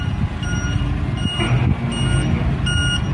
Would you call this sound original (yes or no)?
yes